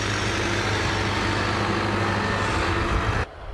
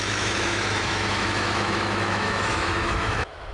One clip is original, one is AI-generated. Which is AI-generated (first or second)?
second